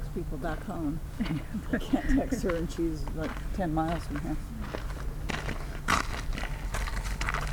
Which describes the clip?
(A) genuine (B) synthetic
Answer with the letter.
A